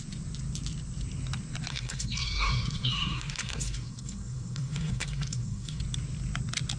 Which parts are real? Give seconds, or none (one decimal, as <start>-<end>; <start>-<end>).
0.0-1.7; 5.8-6.8